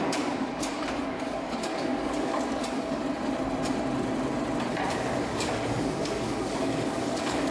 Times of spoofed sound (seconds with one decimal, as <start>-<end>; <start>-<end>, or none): 0.0-3.0; 4.9-7.5